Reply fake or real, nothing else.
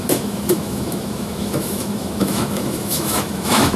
fake